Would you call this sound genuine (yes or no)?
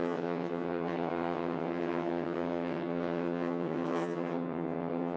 no